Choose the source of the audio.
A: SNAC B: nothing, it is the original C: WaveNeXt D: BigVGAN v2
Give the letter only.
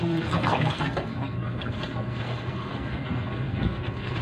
A